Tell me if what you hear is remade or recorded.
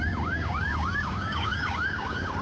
remade